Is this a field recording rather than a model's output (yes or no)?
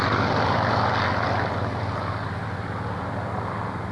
yes